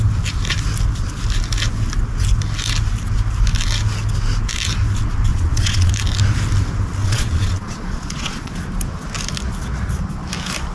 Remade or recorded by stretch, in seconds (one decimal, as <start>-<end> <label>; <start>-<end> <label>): 0.0-5.3 recorded; 5.3-5.9 remade; 5.9-7.0 recorded; 7.0-8.5 remade; 8.5-10.7 recorded